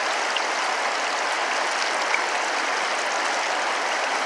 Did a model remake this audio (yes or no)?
no